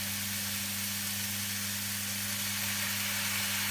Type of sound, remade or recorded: recorded